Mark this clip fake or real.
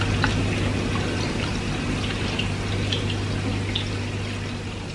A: real